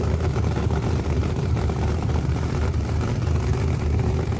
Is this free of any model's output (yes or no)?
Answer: no